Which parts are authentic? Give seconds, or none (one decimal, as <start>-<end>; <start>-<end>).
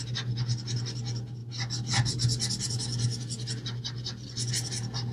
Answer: 0.0-5.1